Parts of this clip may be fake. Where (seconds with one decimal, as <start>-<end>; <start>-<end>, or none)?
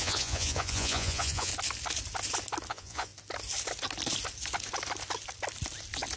0.0-1.5; 2.7-3.1